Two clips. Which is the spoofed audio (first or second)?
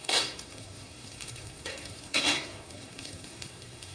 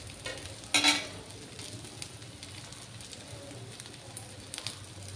first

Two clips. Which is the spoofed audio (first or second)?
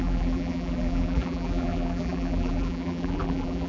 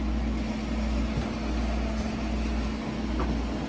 first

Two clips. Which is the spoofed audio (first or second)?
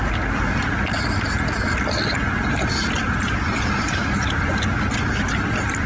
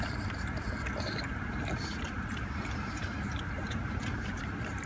second